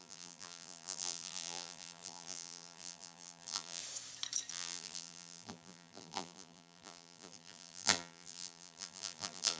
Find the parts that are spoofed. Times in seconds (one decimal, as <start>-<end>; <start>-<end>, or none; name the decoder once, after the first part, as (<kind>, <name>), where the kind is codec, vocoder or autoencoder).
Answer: 0.0-3.8 (vocoder, BigVGAN v2); 4.5-9.6